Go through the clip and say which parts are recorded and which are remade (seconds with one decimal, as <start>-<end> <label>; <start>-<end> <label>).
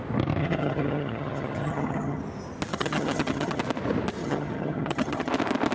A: 0.0-0.4 recorded; 0.4-2.2 remade; 2.2-2.7 recorded; 2.7-3.6 remade; 3.6-4.2 recorded; 4.2-5.3 remade; 5.3-5.7 recorded